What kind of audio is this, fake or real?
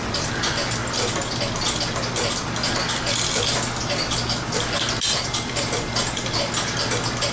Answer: real